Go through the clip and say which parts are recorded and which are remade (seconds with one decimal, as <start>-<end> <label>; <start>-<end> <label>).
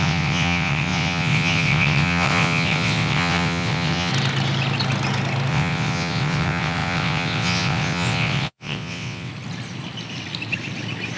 0.0-4.1 remade; 4.1-5.5 recorded; 5.5-9.3 remade; 9.3-11.2 recorded